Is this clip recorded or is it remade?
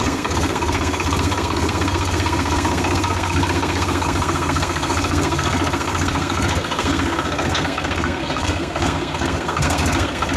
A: remade